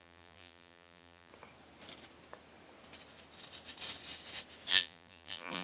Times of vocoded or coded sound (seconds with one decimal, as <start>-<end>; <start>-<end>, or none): 0.0-1.3; 4.7-5.6